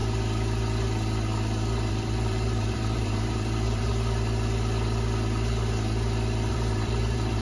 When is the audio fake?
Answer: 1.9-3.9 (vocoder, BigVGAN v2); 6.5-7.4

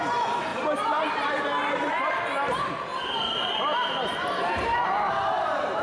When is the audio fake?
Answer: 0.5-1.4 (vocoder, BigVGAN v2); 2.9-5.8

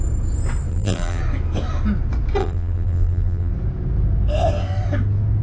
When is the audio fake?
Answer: 0.7-1.2 (vocoder, BigVGAN v2); 2.4-3.5